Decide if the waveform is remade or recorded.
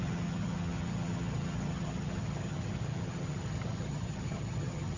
remade